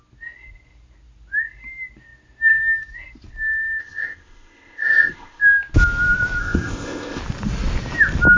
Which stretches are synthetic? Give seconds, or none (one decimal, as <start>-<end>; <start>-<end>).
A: 3.8-5.4; 6.4-7.2